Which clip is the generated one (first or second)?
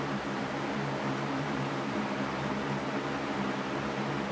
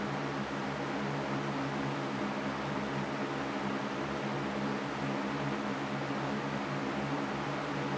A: first